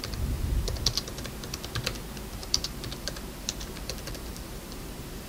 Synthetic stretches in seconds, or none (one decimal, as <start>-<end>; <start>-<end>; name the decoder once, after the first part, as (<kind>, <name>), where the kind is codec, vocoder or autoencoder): 2.4-5.3 (vocoder, BigVGAN v2)